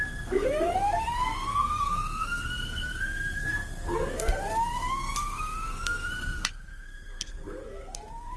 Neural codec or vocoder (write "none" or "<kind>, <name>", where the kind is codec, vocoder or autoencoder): codec, SNAC